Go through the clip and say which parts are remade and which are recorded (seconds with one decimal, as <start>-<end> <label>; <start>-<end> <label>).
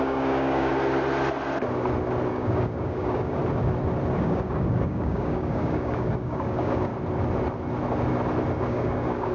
0.0-0.7 remade; 0.7-2.3 recorded; 2.3-3.4 remade; 3.4-4.2 recorded; 4.2-6.9 remade; 6.9-8.6 recorded; 8.6-9.3 remade